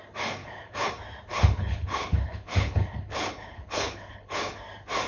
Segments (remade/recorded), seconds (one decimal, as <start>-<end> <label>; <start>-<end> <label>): 0.0-0.4 recorded; 0.4-0.9 remade; 0.9-1.3 recorded; 1.3-4.4 remade; 4.4-5.1 recorded